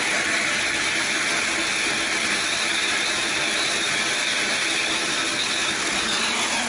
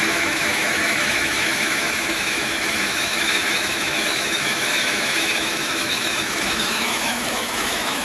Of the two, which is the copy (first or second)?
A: second